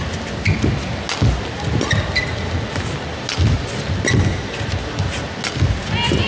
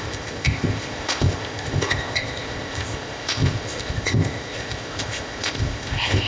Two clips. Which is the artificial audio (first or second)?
second